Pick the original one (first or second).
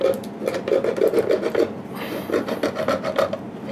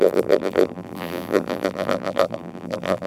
first